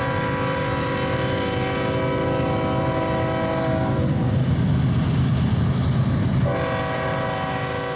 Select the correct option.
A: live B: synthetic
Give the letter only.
A